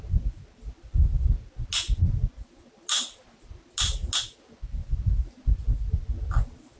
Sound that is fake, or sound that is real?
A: real